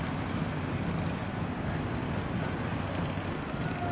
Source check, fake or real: real